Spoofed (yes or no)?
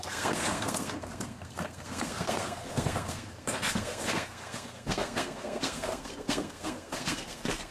yes